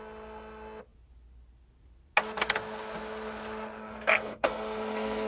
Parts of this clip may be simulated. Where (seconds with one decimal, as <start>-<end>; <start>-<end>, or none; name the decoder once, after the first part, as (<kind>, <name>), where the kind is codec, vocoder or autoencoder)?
3.8-5.3 (codec, SNAC)